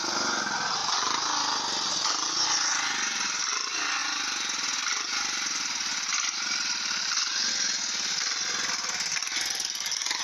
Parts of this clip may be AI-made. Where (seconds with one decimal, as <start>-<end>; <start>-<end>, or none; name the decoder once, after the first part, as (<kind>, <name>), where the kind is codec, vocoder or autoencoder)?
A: none